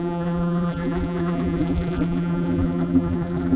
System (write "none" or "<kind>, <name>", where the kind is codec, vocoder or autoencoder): vocoder, BigVGAN v2